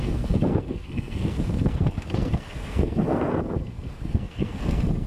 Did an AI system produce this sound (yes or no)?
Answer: yes